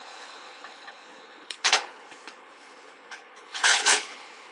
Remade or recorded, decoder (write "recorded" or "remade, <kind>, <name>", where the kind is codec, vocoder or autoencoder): remade, codec, HILCodec